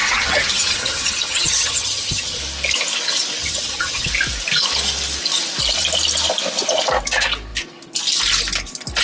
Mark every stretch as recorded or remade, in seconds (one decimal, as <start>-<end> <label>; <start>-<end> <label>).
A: 0.0-2.4 remade; 2.4-3.4 recorded; 3.4-4.1 remade; 4.1-9.0 recorded